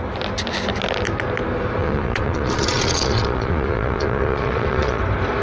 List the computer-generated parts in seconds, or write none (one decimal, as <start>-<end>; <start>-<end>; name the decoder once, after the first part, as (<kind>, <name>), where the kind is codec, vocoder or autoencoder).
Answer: 1.8-5.0 (vocoder, Vocos)